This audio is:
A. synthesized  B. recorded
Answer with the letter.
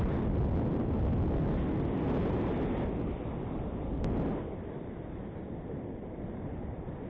B